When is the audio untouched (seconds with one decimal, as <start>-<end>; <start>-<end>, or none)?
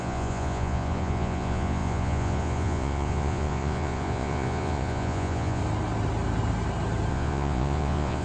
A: 5.6-7.1